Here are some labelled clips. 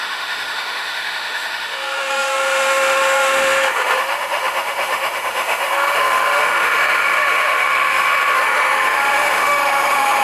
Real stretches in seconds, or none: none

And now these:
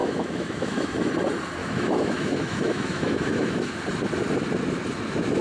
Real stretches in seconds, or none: 1.1-1.6; 3.8-5.4